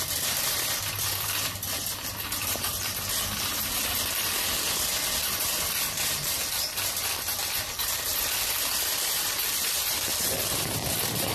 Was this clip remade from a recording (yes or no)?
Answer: yes